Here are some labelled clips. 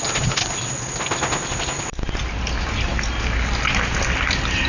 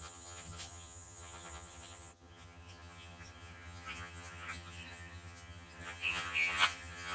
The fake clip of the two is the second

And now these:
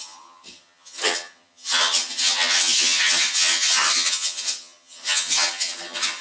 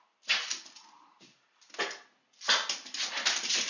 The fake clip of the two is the first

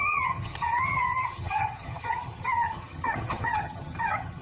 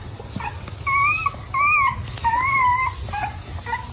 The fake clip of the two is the first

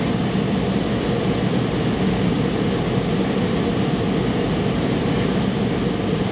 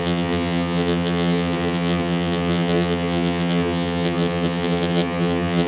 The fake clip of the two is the second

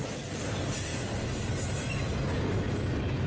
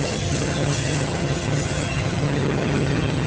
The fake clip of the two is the second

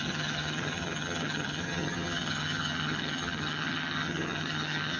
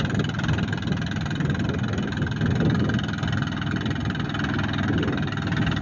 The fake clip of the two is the first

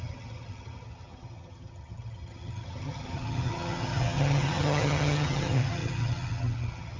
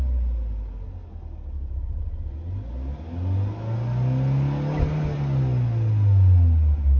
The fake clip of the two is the first